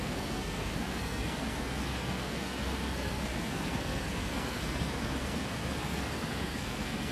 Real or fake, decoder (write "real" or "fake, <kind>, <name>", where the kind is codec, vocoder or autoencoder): fake, codec, SNAC